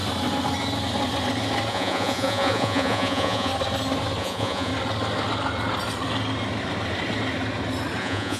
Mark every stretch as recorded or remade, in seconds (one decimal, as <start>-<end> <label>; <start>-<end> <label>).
0.0-1.7 recorded; 1.7-3.5 remade; 3.5-4.2 recorded; 4.2-4.7 remade; 4.7-8.0 recorded; 8.0-8.4 remade